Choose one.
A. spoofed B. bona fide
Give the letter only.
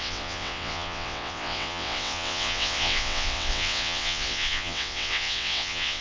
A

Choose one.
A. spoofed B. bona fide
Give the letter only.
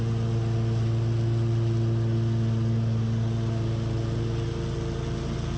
B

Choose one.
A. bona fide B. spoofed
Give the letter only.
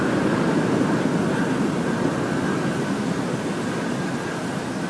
A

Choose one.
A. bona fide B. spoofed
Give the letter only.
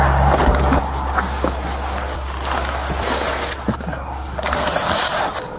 A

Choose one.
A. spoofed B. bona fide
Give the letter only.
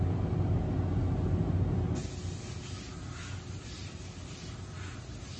B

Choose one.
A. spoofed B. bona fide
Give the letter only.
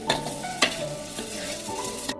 A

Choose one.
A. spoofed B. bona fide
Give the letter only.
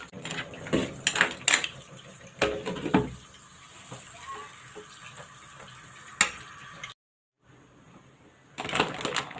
B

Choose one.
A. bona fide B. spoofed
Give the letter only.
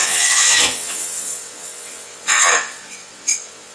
B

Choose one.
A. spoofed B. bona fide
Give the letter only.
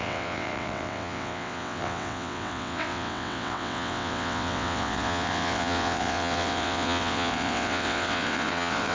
A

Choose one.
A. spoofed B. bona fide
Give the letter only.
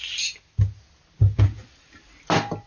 B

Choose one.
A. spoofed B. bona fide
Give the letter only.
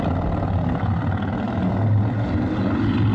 B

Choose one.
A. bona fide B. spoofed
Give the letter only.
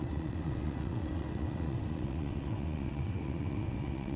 B